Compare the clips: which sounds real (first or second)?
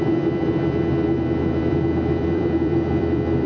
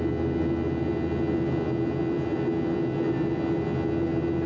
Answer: second